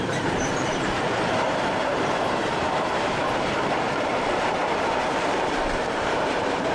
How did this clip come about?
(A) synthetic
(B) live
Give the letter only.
A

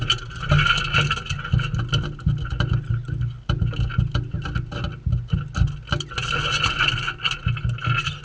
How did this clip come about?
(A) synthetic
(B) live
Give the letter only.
B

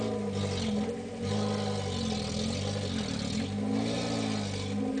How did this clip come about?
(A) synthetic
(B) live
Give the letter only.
B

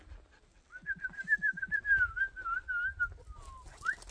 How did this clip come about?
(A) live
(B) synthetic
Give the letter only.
A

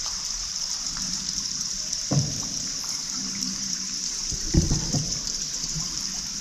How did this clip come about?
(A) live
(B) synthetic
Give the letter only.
B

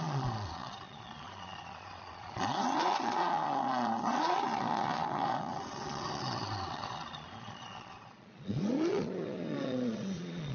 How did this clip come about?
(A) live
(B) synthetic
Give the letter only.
B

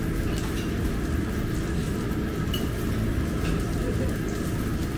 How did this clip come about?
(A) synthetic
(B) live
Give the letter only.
B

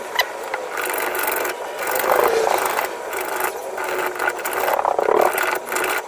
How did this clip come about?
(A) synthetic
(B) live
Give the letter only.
B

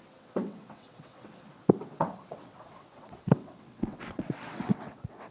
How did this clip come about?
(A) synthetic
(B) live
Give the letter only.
A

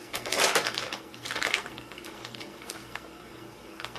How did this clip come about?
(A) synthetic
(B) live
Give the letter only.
A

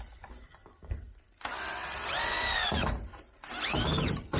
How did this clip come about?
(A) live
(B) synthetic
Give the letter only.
A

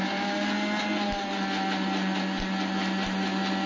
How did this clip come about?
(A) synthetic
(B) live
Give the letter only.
B